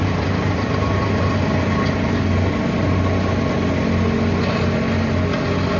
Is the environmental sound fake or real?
real